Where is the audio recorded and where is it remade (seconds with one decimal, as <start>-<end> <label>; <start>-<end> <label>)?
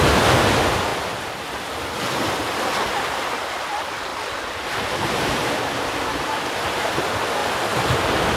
0.0-0.9 recorded; 0.9-1.5 remade; 1.5-4.1 recorded; 4.1-7.0 remade; 7.0-7.4 recorded; 7.4-8.0 remade; 8.0-8.4 recorded